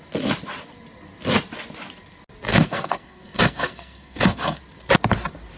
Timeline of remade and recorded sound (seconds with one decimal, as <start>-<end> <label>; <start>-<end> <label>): 0.0-2.5 recorded; 2.5-4.6 remade; 4.6-5.6 recorded